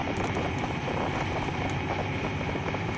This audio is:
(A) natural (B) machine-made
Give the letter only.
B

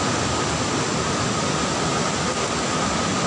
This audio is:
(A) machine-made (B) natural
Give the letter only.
B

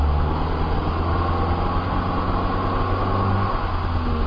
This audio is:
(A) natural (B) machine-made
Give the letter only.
A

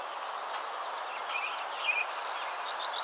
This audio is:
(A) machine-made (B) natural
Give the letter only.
B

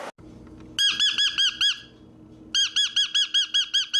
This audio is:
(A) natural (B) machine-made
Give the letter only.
A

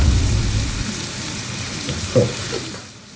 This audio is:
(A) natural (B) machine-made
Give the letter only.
A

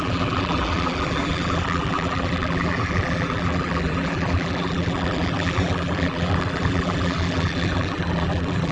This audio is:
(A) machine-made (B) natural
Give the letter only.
A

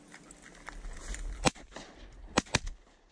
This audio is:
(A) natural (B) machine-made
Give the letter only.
A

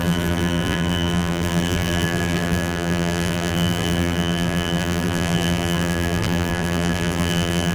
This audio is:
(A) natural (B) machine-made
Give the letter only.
B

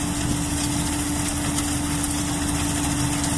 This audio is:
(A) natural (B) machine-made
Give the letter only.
A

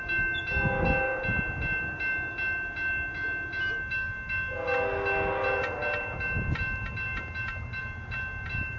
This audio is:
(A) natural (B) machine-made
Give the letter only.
A